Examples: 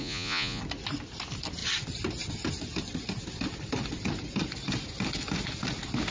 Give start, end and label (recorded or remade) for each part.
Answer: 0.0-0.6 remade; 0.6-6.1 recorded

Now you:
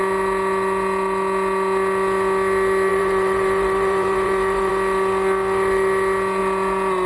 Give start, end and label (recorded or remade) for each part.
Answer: 0.0-2.9 recorded; 2.9-4.7 remade; 4.7-7.1 recorded

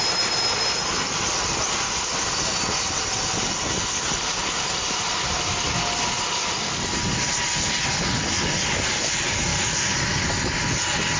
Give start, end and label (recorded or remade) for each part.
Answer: 0.0-11.2 recorded

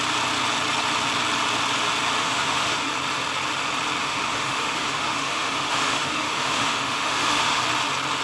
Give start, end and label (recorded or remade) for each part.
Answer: 0.0-2.2 recorded; 2.2-2.9 remade; 2.9-4.0 recorded; 4.0-7.6 remade; 7.6-8.2 recorded